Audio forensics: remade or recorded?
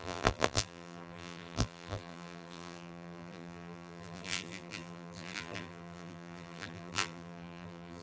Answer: remade